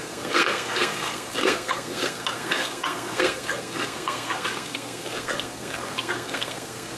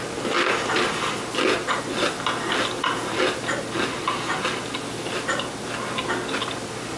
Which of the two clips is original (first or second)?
second